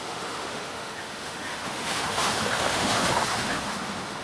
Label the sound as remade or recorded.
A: remade